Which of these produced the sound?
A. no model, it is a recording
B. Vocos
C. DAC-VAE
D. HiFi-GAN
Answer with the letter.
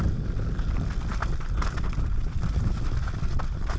A